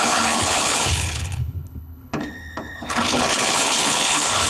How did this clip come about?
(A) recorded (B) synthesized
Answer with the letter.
B